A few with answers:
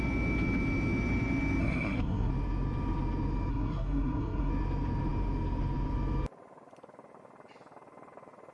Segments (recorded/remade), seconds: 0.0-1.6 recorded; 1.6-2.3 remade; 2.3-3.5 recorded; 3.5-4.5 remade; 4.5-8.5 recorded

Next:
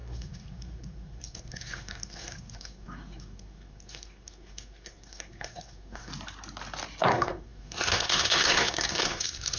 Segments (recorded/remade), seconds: 0.0-6.1 remade; 6.1-7.0 recorded; 7.0-9.6 remade

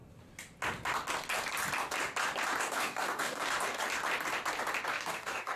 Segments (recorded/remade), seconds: 0.0-2.6 recorded; 2.6-3.8 remade; 3.8-4.9 recorded; 4.9-5.6 remade

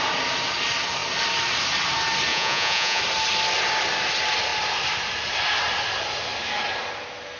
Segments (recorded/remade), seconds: 0.0-2.3 recorded; 2.3-3.0 remade; 3.0-7.4 recorded